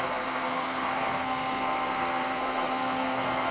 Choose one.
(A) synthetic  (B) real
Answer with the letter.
A